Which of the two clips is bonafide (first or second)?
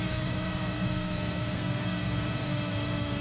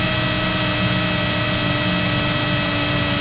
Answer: second